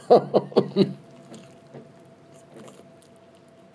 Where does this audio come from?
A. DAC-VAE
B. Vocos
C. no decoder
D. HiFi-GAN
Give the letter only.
C